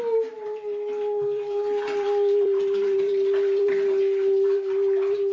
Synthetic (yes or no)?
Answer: yes